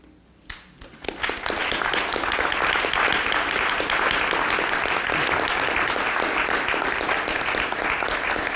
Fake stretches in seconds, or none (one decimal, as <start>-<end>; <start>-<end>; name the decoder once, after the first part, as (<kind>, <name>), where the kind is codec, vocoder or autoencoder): none